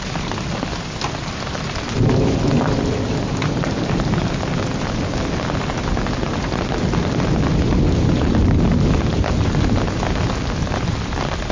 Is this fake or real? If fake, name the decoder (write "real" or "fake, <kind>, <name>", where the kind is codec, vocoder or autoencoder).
real